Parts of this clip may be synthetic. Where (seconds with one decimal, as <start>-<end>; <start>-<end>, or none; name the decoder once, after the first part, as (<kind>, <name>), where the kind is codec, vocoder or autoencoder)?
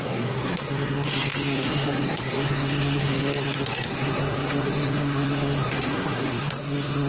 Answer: 0.0-7.1 (codec, SNAC)